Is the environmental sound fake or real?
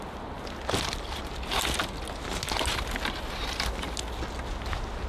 real